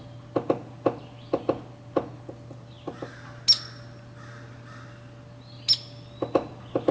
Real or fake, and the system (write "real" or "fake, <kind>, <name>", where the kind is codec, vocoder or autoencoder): real